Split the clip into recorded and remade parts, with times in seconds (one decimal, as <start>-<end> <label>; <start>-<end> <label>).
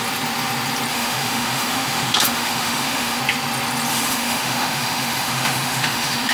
0.0-0.9 recorded; 0.9-3.2 remade; 3.2-3.9 recorded; 3.9-6.3 remade